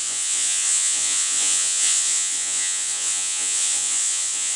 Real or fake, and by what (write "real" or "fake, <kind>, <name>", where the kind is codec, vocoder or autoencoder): fake, vocoder, Vocos